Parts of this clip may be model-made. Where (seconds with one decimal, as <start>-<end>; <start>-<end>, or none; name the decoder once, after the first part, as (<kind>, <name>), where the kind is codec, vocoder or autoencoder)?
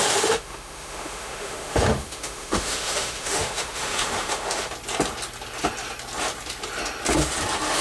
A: 0.0-4.7 (autoencoder, DAC-VAE)